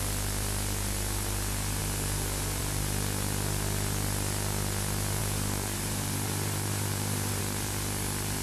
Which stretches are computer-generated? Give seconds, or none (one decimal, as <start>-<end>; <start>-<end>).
1.8-2.6; 5.2-7.4